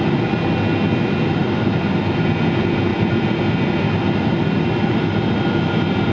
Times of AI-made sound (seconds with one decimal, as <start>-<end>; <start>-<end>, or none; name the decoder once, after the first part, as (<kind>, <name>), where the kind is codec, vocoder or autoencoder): none